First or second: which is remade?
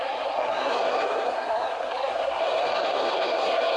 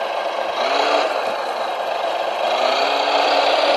first